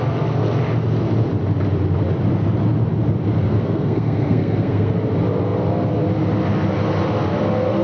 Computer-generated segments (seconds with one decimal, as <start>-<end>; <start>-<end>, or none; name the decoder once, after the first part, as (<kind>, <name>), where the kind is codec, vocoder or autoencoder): 3.4-4.9 (codec, SNAC)